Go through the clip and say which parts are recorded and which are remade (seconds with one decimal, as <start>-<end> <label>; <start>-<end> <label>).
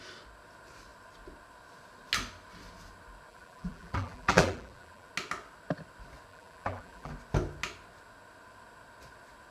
0.0-3.3 recorded; 3.3-5.1 remade; 5.1-6.3 recorded; 6.3-7.1 remade; 7.1-9.5 recorded